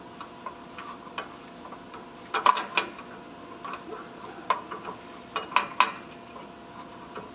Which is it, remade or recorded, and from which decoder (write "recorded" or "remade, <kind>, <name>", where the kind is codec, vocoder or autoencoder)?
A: recorded